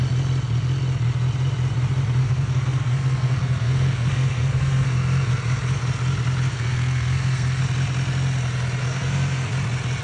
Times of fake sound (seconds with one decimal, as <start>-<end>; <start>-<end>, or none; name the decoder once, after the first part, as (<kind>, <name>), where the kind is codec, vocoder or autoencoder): 2.2-5.3 (codec, SNAC); 6.5-7.6; 8.8-9.5